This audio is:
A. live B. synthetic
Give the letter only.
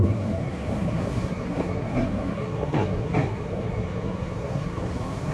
B